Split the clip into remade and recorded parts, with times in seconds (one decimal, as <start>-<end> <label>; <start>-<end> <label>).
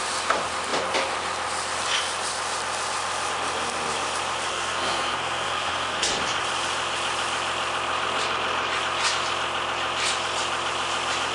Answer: 0.0-4.5 recorded; 4.5-6.1 remade; 6.1-11.3 recorded